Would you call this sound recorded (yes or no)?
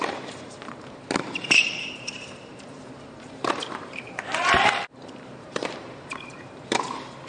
no